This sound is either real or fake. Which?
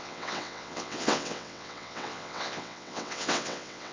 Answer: fake